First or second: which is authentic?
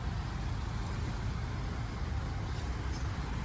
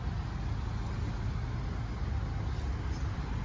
second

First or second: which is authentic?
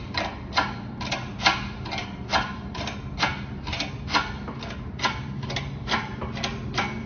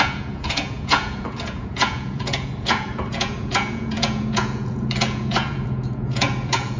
first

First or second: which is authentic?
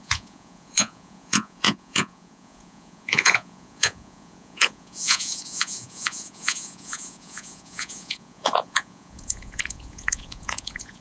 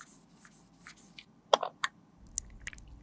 second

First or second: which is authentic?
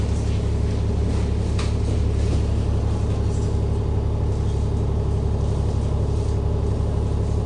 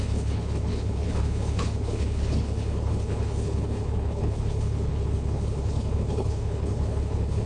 first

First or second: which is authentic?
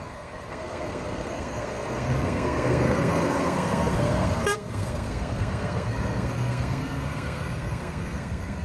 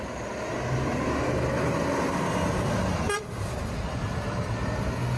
second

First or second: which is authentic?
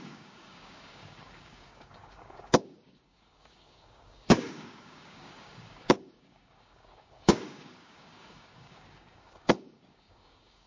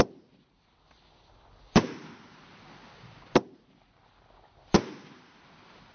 second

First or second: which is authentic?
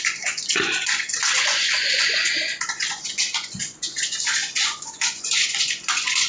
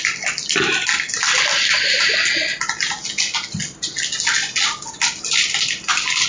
second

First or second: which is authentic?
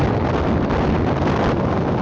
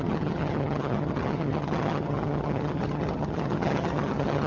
first